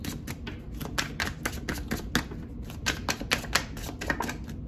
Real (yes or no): yes